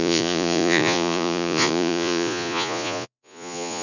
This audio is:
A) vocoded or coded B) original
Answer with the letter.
A